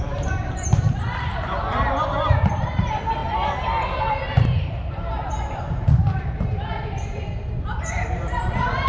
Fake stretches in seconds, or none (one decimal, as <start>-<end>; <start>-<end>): 0.0-1.3; 1.9-3.2; 4.1-8.9